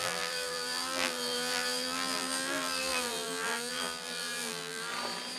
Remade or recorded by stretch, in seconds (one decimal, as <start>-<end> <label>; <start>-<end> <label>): 0.0-4.9 remade; 4.9-5.4 recorded